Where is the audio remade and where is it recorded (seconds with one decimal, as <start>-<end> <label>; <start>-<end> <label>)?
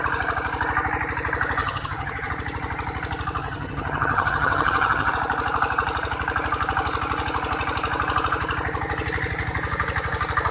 0.0-1.6 recorded; 1.6-2.3 remade; 2.3-3.4 recorded; 3.4-5.1 remade; 5.1-10.5 recorded